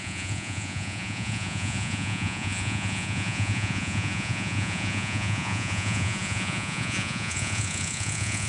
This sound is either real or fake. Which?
fake